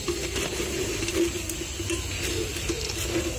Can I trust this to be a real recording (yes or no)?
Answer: yes